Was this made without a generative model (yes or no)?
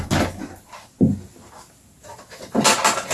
yes